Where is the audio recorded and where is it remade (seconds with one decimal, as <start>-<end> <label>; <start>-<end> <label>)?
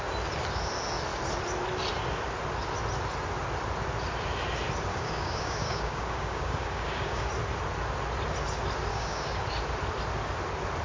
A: 0.0-4.9 recorded; 4.9-7.3 remade; 7.3-8.9 recorded; 8.9-9.5 remade; 9.5-10.8 recorded